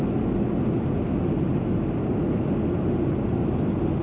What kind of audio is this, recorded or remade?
recorded